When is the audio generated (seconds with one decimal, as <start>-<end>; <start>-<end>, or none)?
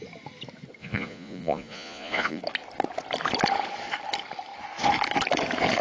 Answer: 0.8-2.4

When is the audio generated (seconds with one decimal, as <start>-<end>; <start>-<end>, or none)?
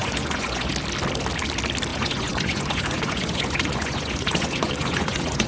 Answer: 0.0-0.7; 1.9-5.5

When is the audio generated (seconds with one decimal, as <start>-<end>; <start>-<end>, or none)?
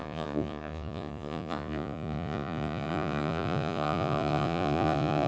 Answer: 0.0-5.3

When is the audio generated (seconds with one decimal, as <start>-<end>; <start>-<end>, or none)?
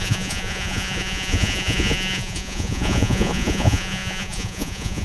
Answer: 0.0-5.0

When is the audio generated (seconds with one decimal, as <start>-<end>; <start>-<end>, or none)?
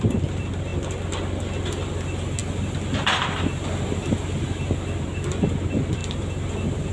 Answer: none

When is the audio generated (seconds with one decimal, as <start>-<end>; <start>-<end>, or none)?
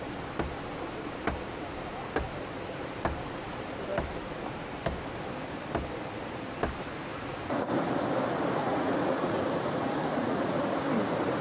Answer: 7.1-7.7; 8.6-10.8